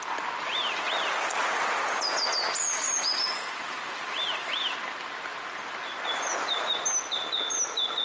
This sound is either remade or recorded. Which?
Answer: recorded